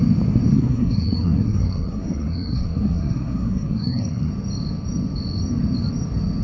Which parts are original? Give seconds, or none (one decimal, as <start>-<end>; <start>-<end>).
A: 0.0-0.5; 4.3-6.4